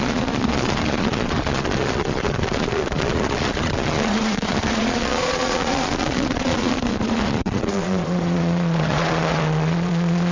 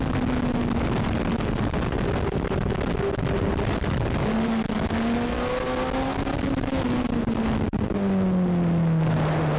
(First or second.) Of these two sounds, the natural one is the second